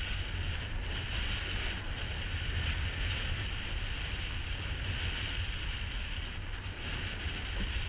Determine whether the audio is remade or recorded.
recorded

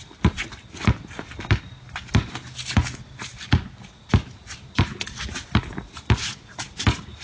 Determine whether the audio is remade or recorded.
recorded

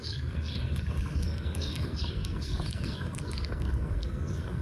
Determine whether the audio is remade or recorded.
remade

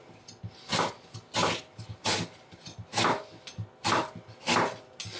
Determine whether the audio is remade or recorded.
recorded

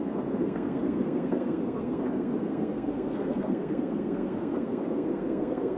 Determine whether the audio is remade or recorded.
remade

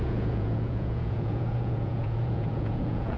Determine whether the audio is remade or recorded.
remade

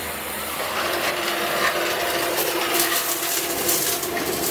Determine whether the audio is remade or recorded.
remade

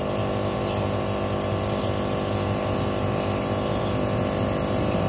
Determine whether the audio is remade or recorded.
recorded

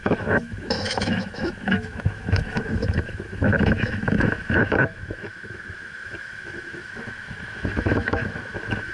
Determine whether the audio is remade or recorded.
remade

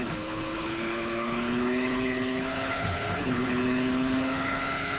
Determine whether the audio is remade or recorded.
remade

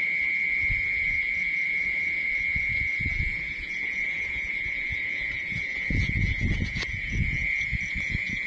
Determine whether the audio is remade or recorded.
remade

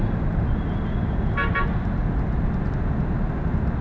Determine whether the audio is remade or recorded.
recorded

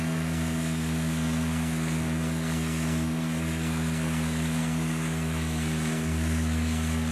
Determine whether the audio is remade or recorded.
remade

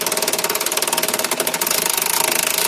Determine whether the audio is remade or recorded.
recorded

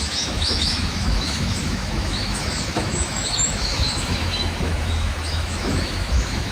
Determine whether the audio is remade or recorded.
remade